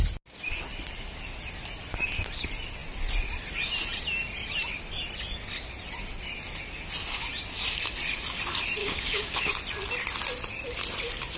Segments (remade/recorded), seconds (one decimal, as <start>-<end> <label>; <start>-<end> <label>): 0.0-8.8 recorded; 8.8-9.5 remade; 9.5-11.4 recorded